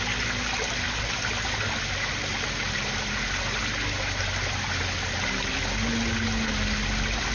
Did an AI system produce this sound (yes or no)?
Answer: no